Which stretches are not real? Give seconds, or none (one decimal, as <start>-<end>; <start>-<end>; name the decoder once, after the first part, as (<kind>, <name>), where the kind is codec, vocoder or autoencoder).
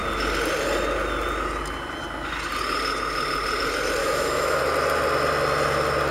4.0-4.6 (autoencoder, DAC-VAE)